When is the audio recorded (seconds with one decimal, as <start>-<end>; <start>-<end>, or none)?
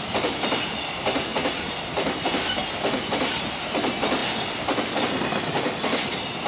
0.0-6.5